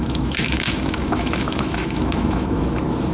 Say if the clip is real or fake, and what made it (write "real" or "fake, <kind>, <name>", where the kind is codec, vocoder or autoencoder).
fake, autoencoder, DAC-VAE